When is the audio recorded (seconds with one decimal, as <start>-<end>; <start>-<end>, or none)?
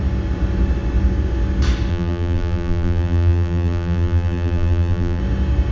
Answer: 0.0-1.9; 5.2-5.7